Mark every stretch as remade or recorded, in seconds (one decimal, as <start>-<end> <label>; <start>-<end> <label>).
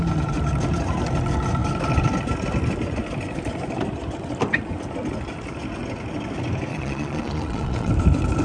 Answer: 0.0-6.7 recorded; 6.7-7.9 remade; 7.9-8.4 recorded